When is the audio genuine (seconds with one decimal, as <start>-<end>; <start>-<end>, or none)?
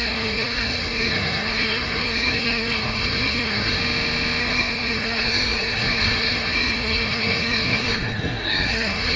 3.8-4.4